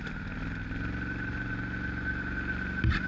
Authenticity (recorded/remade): recorded